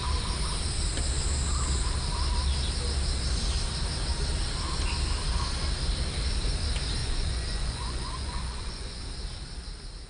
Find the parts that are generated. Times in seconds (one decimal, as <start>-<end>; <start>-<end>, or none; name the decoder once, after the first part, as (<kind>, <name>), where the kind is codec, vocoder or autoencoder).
7.0-9.0 (vocoder, Vocos)